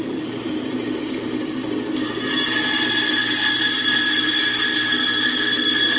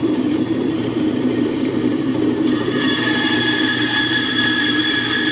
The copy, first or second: second